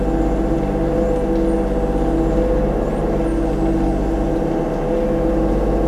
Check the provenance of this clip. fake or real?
real